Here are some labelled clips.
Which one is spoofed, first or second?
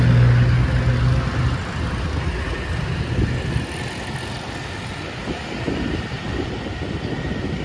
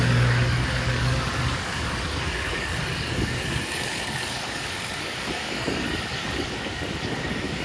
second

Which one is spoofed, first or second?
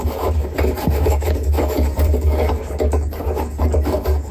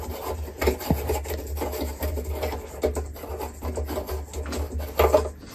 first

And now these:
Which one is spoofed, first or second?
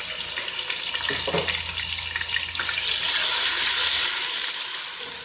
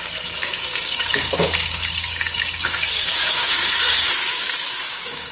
second